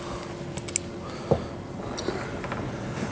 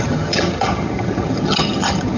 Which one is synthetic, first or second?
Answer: second